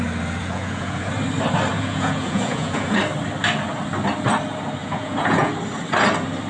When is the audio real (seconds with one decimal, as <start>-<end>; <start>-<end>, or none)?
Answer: 0.0-0.4; 1.1-1.7; 3.0-4.8; 5.5-6.5